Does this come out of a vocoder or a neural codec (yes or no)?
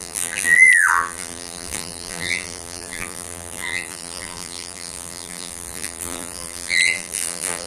yes